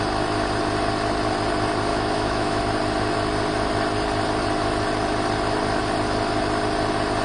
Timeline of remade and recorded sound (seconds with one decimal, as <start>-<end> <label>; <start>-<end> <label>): 0.0-1.9 recorded; 1.9-2.6 remade; 2.6-7.2 recorded